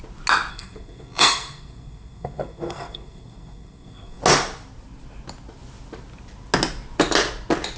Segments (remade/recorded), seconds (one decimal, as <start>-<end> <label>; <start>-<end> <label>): 0.0-0.5 recorded; 0.5-4.2 remade; 4.2-7.8 recorded